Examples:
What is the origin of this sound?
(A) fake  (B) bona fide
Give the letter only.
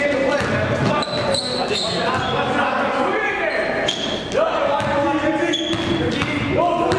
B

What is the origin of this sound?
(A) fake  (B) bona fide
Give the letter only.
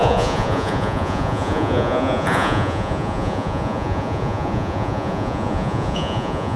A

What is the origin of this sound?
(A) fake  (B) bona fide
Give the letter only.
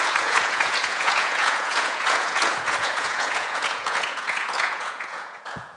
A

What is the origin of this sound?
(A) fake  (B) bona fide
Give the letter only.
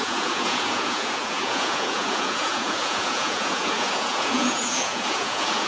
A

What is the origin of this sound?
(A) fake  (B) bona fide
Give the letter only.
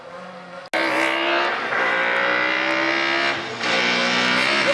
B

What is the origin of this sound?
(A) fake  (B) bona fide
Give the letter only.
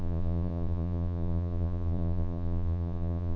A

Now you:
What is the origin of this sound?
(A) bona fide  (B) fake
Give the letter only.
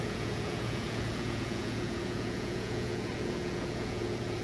B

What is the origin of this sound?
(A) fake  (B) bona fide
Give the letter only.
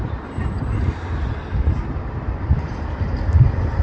B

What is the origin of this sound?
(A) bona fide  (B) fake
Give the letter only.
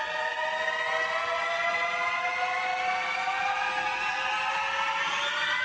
A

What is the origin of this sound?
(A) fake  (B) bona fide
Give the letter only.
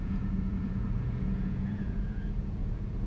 A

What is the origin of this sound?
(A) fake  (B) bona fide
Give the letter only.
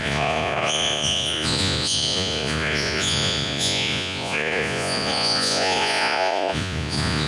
A